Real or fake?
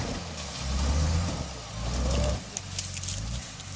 real